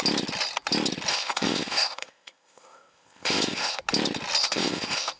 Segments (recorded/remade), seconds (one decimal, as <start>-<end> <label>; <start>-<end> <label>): 0.0-1.1 recorded; 1.1-3.8 remade; 3.8-4.4 recorded; 4.4-5.2 remade